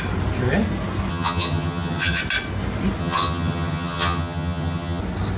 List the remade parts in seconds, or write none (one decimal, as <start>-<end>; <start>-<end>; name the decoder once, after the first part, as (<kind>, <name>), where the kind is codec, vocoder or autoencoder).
1.1-2.2 (vocoder, HiFi-GAN); 3.0-5.0